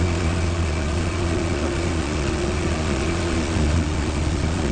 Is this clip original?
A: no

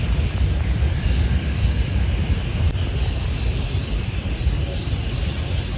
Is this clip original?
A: yes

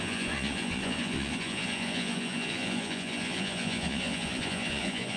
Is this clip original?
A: no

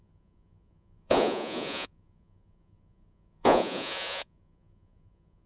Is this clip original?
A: no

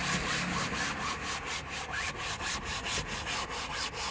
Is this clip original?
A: yes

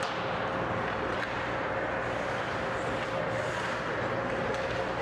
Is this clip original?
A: yes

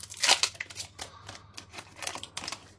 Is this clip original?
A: yes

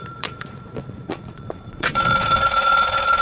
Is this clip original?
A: no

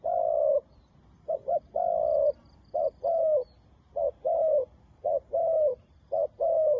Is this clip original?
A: yes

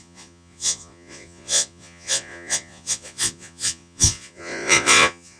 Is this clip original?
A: no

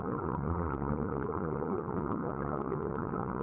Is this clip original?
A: no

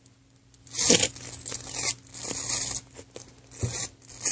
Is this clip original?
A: yes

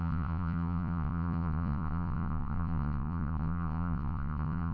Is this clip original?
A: no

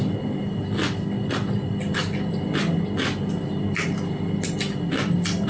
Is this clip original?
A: yes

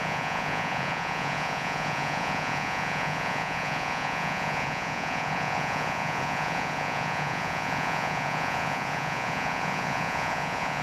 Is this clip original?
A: no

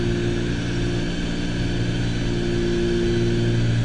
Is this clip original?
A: yes